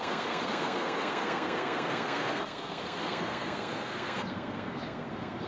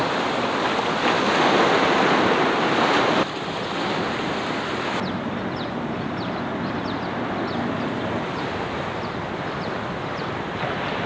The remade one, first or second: first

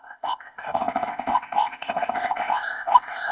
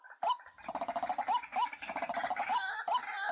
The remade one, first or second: first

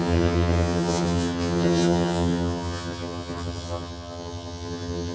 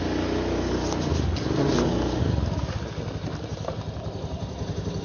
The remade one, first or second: first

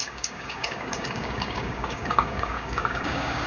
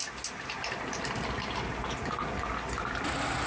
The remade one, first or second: first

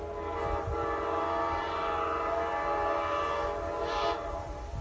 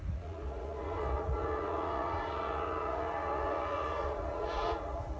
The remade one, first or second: second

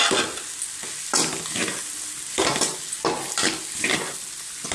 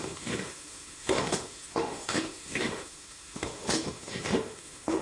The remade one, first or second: second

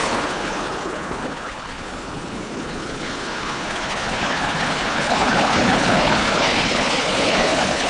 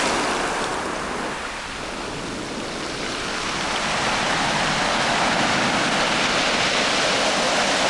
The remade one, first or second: first